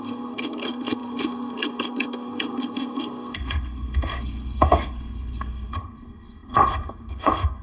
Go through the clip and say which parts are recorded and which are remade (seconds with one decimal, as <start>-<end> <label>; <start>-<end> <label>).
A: 0.0-7.6 remade